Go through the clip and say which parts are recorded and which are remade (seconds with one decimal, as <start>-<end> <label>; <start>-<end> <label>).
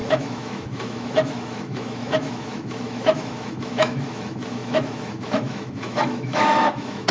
0.0-7.1 remade